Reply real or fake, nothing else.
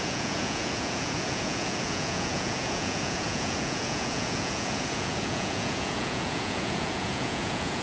fake